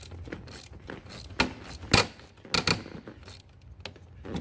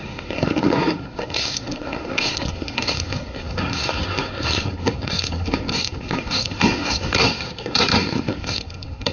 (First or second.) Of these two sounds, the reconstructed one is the second